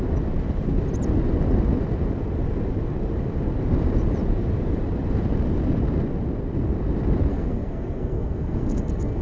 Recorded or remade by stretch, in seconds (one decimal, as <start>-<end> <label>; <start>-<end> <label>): 0.0-7.3 recorded; 7.3-9.2 remade